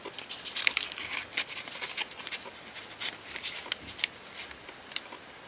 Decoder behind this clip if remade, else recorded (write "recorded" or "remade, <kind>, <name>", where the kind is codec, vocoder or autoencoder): recorded